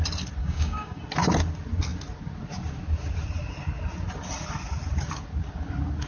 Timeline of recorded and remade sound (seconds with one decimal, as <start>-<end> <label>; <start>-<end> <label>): 0.0-0.4 recorded; 0.4-1.0 remade; 1.0-6.1 recorded